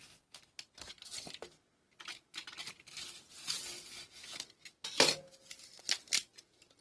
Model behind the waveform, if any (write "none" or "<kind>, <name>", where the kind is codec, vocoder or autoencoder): none